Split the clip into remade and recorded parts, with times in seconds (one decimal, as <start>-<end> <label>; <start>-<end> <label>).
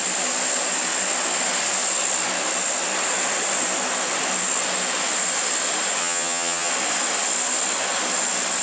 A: 0.0-6.0 recorded; 6.0-6.7 remade; 6.7-8.6 recorded